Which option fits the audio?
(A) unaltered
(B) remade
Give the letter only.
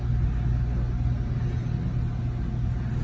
A